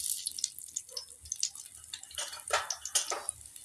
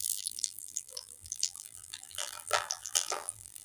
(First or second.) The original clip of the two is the first